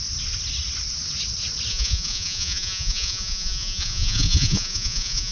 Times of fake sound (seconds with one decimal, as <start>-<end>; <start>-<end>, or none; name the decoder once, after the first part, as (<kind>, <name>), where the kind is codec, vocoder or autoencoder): 1.7-5.3 (vocoder, Vocos)